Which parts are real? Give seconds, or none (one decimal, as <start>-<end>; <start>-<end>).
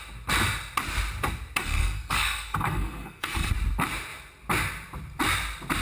0.0-1.6; 3.5-5.8